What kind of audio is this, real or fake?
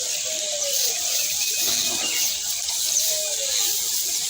real